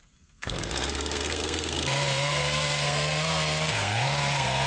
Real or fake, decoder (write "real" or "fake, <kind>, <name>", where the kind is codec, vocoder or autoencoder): fake, codec, SNAC